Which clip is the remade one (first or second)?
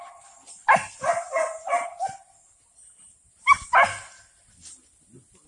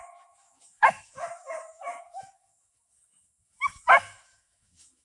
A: second